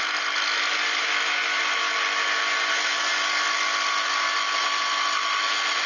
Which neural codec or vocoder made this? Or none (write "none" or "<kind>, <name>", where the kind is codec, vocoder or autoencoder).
none